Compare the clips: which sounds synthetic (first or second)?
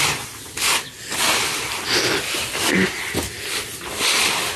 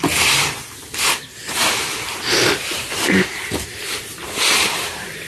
second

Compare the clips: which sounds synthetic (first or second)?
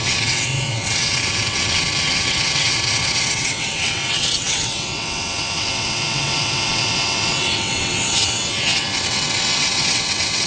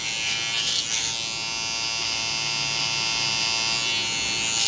first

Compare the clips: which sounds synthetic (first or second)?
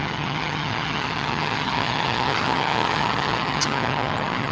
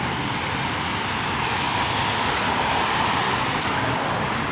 first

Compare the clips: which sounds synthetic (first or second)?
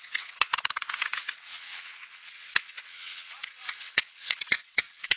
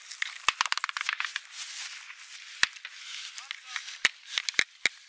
first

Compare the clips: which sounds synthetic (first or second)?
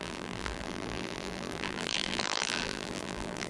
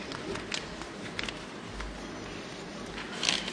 first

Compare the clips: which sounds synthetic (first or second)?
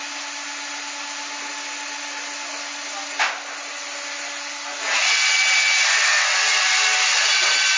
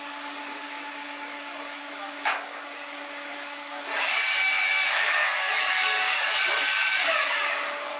second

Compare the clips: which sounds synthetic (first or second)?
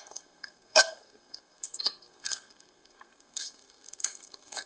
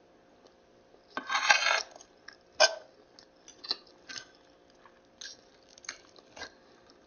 first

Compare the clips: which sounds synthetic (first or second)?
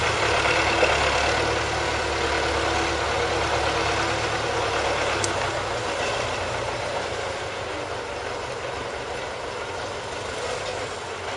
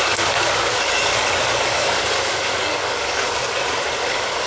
second